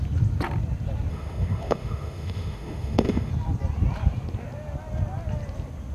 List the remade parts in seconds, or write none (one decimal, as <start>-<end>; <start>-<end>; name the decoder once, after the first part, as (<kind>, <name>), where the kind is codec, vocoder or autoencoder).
1.1-3.3 (autoencoder, DAC-VAE)